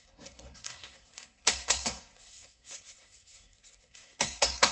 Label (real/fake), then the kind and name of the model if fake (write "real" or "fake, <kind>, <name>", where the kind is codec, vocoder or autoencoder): fake, codec, SNAC